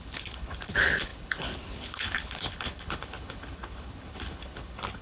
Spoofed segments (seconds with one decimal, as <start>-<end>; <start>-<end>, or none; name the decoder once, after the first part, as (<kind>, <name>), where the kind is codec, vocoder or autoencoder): 0.0-5.0 (codec, HILCodec)